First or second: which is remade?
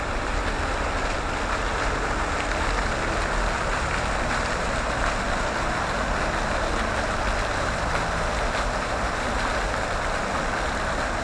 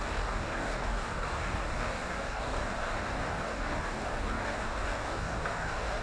second